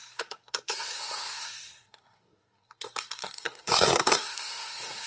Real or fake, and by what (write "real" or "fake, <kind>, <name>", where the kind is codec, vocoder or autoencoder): fake, codec, SNAC